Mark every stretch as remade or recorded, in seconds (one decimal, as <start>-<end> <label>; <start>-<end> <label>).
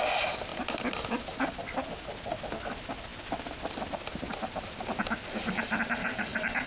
0.0-6.0 recorded; 6.0-6.7 remade